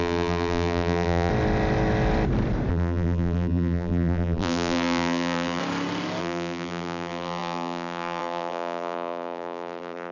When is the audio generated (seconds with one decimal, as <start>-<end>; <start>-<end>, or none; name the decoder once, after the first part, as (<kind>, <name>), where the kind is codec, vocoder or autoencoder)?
0.0-1.3 (vocoder, BigVGAN v2); 2.7-5.6; 6.2-10.1